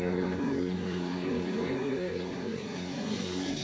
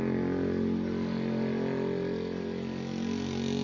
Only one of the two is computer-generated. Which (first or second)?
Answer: first